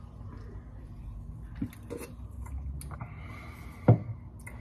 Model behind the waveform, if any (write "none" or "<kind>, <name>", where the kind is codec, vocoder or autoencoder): none